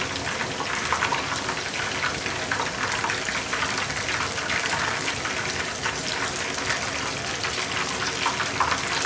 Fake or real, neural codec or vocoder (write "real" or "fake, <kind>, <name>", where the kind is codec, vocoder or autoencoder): real